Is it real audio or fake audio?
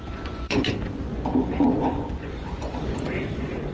fake